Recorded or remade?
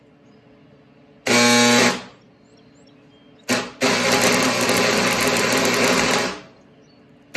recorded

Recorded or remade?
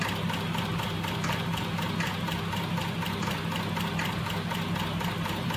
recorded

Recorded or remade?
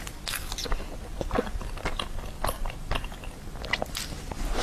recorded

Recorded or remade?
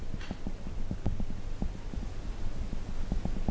recorded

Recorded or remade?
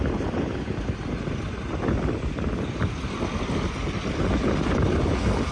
recorded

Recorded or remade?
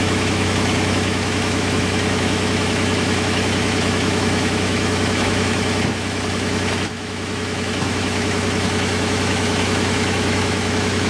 remade